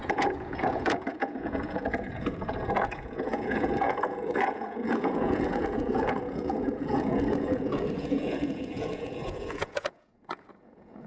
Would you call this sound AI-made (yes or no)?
yes